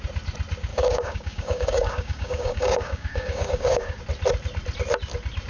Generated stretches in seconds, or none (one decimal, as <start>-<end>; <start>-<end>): 0.7-4.0